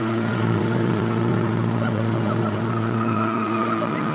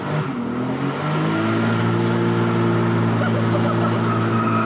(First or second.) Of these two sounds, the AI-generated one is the first